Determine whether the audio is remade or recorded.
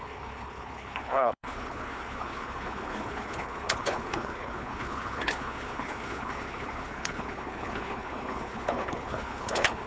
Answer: remade